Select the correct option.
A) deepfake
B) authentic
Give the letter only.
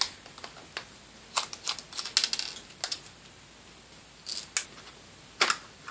B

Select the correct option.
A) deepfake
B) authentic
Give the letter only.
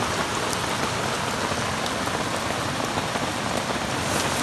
B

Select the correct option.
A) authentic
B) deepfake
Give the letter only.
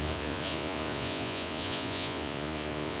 B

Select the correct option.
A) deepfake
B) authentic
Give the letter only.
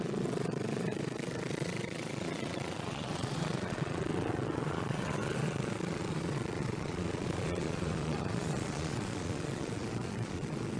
A